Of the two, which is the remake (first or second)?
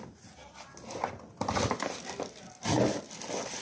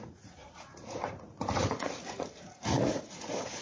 second